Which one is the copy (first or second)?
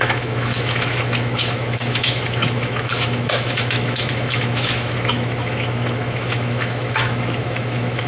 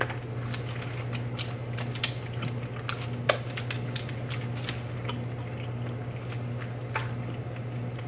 first